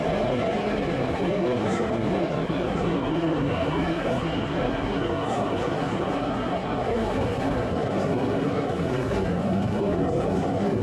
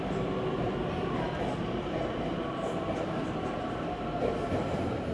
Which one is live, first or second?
second